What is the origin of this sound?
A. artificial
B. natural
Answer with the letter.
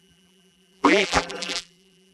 A